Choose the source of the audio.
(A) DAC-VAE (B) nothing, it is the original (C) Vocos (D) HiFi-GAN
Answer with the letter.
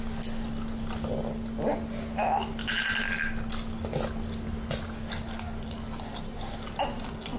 B